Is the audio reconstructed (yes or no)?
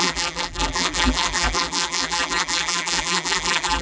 yes